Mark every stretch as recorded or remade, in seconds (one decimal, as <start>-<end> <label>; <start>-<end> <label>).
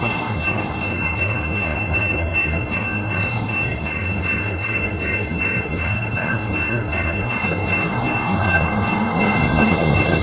0.0-10.2 remade